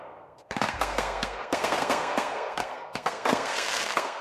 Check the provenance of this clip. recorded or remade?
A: remade